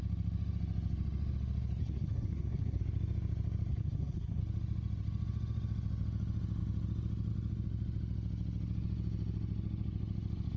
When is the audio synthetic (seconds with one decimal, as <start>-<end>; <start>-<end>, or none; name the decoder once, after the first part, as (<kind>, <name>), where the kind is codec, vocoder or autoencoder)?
1.8-2.8 (codec, SNAC); 3.7-4.4